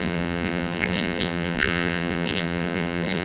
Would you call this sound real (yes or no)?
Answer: no